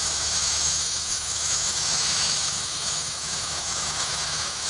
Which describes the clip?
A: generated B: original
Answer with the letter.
A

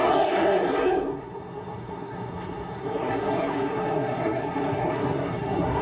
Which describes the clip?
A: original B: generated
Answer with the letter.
B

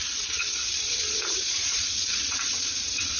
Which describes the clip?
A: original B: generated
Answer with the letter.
B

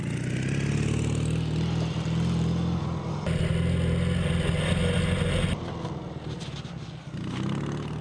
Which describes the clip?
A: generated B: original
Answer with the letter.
B